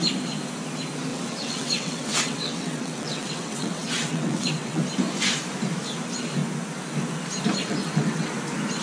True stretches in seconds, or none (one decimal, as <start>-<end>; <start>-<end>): 0.0-1.1; 4.8-7.6; 8.3-8.8